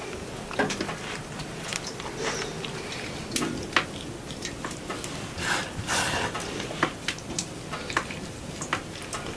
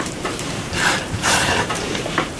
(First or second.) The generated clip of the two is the second